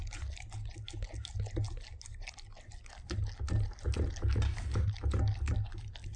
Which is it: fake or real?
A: real